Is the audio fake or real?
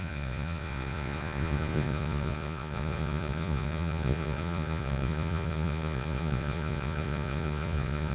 fake